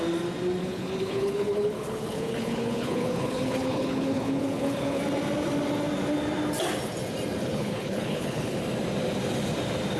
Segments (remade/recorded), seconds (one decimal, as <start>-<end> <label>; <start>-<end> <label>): 0.0-0.6 recorded; 0.6-5.0 remade; 5.0-7.4 recorded; 7.4-8.6 remade; 8.6-10.0 recorded